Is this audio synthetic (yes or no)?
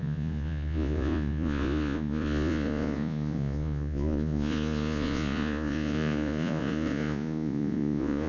yes